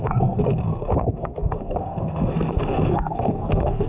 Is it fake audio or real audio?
fake